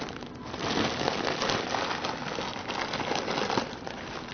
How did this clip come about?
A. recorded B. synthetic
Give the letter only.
A